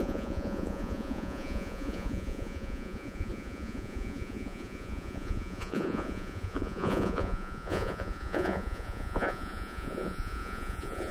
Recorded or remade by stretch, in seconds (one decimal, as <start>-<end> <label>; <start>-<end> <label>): 0.0-11.1 remade